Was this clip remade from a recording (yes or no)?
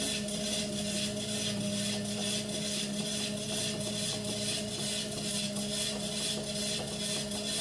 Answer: no